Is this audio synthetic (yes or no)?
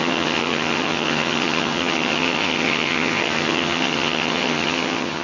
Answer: yes